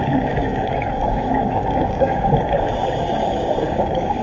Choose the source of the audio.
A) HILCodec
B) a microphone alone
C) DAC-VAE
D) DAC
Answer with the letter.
D